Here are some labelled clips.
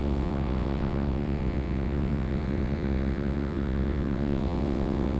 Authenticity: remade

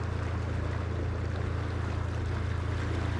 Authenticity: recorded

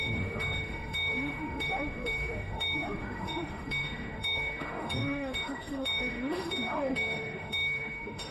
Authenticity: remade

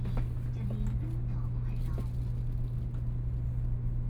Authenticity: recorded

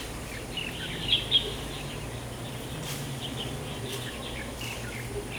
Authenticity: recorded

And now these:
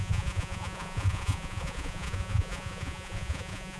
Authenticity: remade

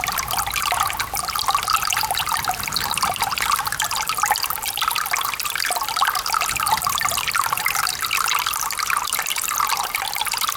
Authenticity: recorded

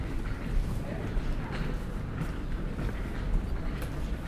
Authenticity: recorded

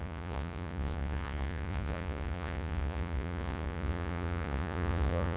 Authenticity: remade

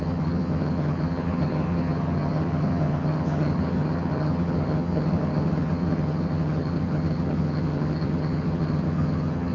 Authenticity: remade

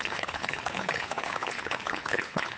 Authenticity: remade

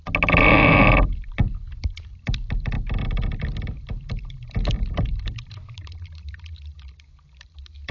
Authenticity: recorded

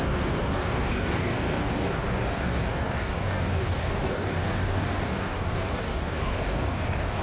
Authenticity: remade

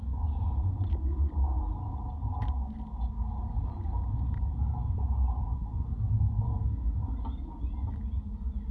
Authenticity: recorded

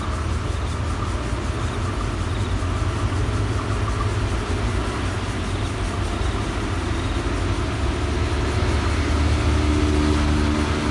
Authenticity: recorded